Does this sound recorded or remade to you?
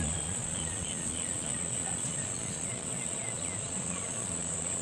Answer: remade